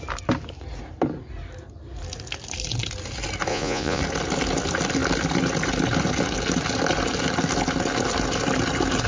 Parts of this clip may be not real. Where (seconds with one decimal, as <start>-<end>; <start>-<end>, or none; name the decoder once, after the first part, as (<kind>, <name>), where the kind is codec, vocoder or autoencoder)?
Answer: 3.5-4.0 (vocoder, Vocos)